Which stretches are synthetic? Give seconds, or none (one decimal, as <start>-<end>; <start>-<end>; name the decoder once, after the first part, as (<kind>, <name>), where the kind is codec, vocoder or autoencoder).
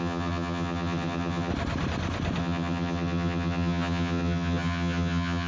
0.0-1.5 (vocoder, HiFi-GAN); 2.4-5.5